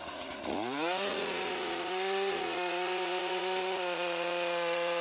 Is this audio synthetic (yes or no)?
yes